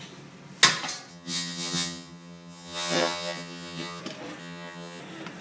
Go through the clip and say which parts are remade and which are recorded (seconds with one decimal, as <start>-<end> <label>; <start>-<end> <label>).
0.0-1.1 recorded; 1.1-4.0 remade; 4.0-4.4 recorded; 4.4-5.0 remade; 5.0-5.4 recorded